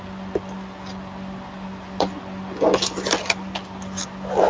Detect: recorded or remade recorded